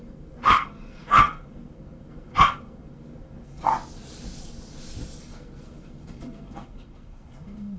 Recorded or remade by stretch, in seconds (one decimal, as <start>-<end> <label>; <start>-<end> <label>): 0.0-3.7 remade; 3.7-5.2 recorded; 5.2-7.8 remade